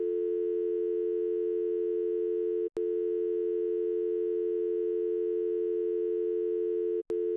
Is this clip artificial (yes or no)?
no